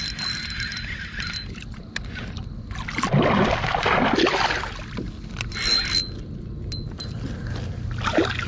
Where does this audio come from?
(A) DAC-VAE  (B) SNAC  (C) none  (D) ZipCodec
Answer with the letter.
C